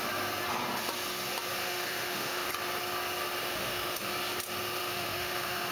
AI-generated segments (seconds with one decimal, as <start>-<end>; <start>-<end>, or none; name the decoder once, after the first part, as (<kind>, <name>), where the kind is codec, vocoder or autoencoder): 1.6-2.5 (autoencoder, DAC-VAE); 3.4-4.1; 4.8-5.7